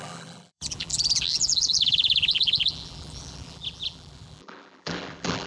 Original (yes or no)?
no